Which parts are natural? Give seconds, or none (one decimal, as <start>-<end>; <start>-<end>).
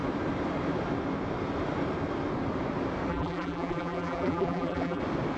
0.0-3.1; 5.0-5.4